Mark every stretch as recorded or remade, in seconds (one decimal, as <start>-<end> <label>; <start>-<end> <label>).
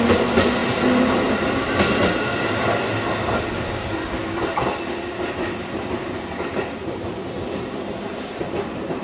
0.0-0.6 recorded; 0.6-1.5 remade; 1.5-4.2 recorded; 4.2-9.0 remade